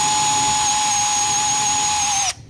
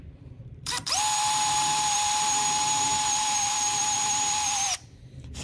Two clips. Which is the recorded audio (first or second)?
first